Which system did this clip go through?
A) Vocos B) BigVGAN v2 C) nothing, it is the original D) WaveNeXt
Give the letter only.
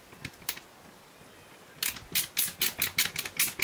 C